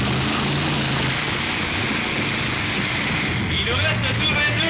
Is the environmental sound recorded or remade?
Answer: recorded